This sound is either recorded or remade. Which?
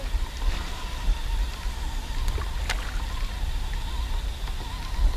recorded